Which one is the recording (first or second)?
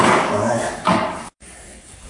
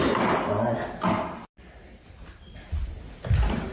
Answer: second